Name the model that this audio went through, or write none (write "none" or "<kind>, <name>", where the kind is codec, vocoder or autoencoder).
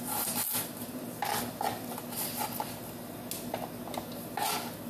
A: none